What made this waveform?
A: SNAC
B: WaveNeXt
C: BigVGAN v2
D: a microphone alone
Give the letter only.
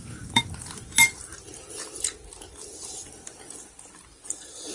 C